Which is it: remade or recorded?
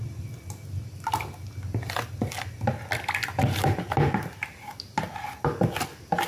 recorded